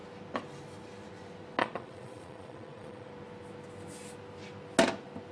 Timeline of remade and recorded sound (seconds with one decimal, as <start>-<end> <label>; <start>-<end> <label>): 0.0-1.6 recorded; 1.6-3.1 remade; 3.1-5.3 recorded